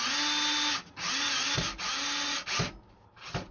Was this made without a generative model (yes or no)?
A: yes